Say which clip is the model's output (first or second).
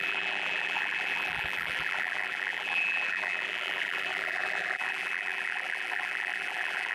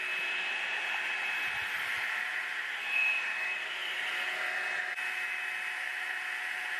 first